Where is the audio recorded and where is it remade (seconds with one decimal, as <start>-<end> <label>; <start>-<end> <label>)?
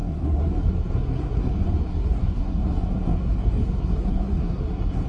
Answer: 0.0-1.5 remade; 1.5-1.9 recorded; 1.9-5.1 remade